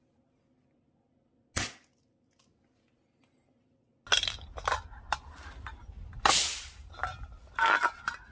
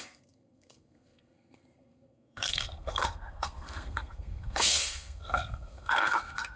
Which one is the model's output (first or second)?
second